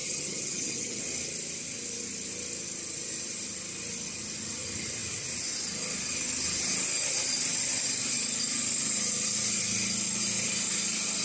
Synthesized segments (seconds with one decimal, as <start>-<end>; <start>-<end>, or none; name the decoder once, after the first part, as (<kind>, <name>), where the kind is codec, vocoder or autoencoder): 0.0-1.0 (vocoder, HiFi-GAN)